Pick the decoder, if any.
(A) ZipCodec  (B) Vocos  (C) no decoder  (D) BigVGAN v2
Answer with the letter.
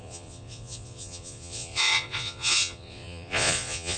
B